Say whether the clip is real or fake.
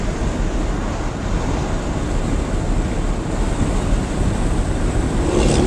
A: real